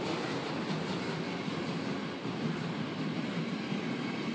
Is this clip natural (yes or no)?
yes